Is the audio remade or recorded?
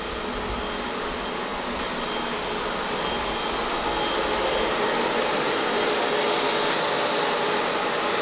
recorded